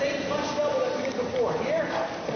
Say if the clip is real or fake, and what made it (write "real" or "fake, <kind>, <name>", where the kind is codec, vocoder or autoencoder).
real